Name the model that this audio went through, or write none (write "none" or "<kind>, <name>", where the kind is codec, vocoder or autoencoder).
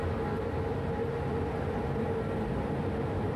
none